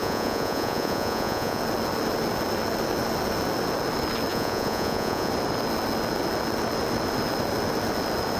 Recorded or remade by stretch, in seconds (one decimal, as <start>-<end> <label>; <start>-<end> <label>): 0.0-1.6 remade; 1.6-4.3 recorded; 4.3-5.3 remade; 5.3-8.4 recorded